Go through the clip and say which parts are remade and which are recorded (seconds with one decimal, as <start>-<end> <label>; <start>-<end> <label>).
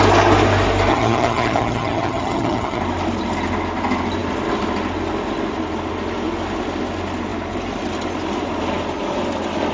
0.0-0.9 recorded; 0.9-2.8 remade; 2.8-9.7 recorded